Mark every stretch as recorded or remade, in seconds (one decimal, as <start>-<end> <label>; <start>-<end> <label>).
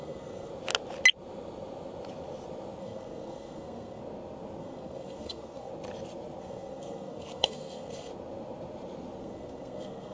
0.0-0.5 remade; 0.5-2.8 recorded; 2.8-4.0 remade; 4.0-4.6 recorded; 4.6-5.7 remade; 5.7-6.4 recorded; 6.4-8.1 remade; 8.1-9.2 recorded; 9.2-10.1 remade